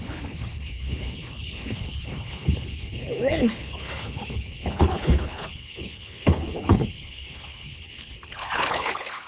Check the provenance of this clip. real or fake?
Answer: fake